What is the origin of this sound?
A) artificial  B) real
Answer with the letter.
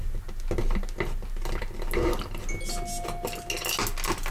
B